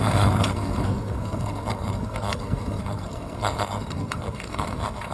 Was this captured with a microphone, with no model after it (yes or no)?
no